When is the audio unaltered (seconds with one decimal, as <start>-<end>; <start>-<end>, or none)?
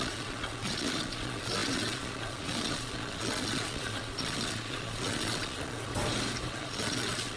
5.9-6.5